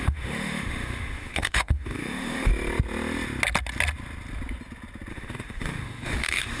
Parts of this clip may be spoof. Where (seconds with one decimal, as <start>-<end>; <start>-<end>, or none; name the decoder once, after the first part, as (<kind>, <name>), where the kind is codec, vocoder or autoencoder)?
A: 0.0-2.5 (autoencoder, DAC-VAE); 5.1-6.6